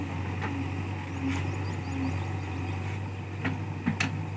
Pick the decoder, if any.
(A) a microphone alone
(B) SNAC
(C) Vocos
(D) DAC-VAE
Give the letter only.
A